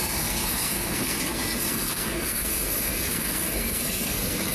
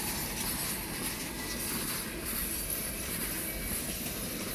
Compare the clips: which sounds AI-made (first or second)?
first